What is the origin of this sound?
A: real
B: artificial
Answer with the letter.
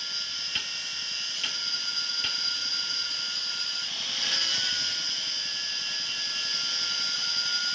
B